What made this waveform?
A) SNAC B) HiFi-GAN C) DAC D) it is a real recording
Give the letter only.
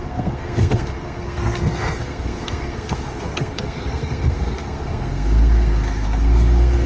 A